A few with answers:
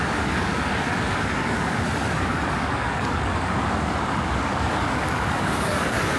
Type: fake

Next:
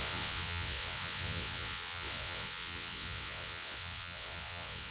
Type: fake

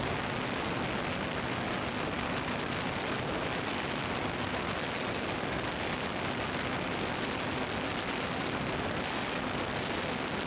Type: real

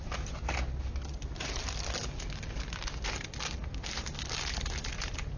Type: real